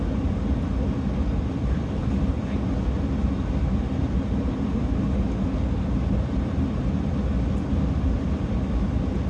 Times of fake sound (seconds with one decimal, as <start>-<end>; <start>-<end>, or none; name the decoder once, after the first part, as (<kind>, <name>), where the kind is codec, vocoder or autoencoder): none